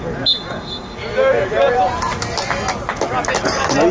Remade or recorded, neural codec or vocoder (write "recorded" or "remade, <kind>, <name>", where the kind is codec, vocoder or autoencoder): recorded